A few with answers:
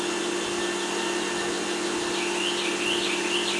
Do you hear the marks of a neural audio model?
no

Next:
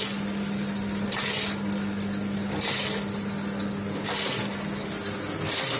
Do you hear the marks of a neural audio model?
no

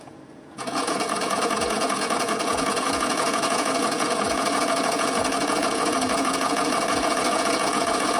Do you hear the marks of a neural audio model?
yes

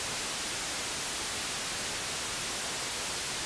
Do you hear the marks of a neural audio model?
no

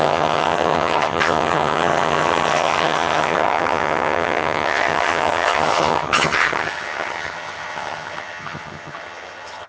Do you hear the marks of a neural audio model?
yes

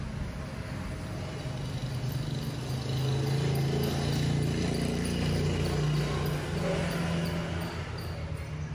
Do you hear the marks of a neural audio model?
no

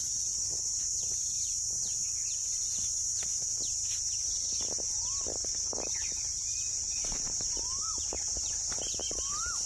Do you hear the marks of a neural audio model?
yes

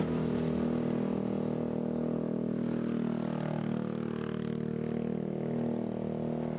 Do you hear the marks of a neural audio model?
no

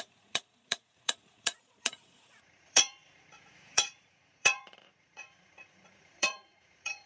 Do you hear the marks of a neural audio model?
yes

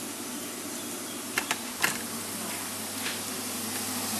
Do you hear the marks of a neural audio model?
no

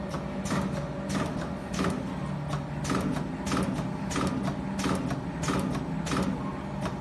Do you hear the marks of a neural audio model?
no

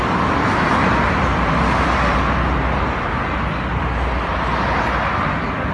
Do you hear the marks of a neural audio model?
no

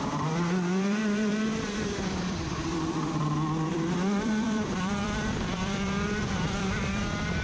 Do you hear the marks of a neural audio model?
yes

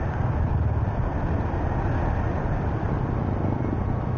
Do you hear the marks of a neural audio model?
no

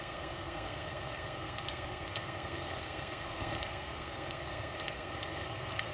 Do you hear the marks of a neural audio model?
yes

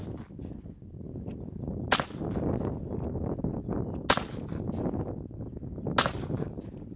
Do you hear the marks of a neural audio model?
no